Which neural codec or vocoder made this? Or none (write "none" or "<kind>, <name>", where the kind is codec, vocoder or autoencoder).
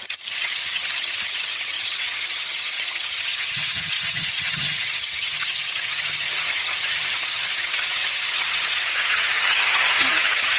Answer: vocoder, HiFi-GAN